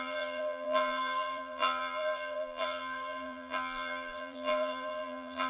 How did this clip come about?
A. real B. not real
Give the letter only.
B